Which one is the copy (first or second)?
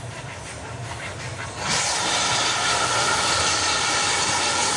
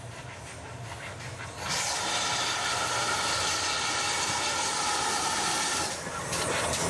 first